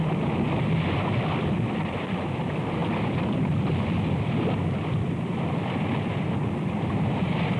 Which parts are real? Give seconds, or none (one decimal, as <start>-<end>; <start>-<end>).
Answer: none